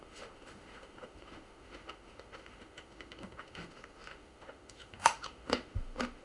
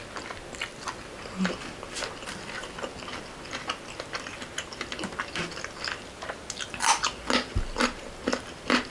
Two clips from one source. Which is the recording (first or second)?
second